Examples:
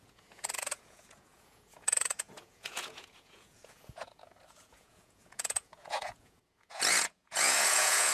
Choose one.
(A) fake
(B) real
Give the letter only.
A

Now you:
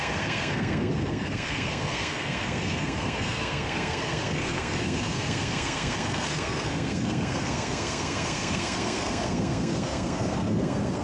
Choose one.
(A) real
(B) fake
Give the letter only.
B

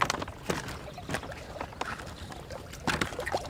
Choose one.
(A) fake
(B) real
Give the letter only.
B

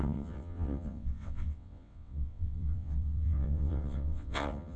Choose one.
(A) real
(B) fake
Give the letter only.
B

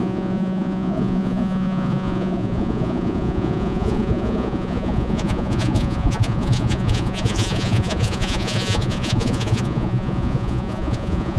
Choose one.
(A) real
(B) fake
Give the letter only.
B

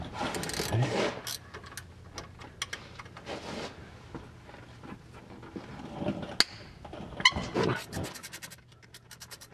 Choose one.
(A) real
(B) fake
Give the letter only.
A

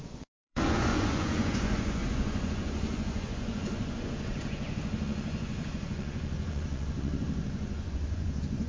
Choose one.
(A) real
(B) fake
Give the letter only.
B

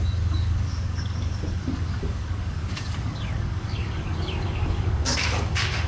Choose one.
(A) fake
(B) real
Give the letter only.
A